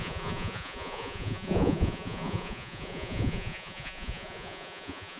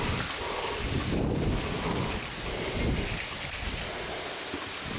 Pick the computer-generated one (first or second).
first